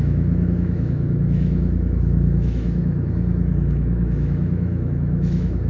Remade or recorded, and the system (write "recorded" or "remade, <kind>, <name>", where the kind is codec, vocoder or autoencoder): remade, autoencoder, DAC-VAE